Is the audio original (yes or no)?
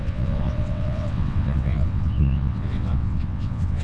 no